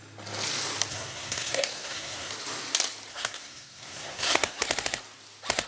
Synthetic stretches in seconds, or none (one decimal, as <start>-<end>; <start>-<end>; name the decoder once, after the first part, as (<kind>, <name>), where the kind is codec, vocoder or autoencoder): 0.9-2.3 (codec, SNAC); 3.1-4.6